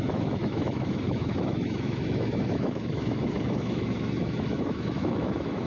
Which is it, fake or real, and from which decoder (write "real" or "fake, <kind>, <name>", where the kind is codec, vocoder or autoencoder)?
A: fake, autoencoder, DAC-VAE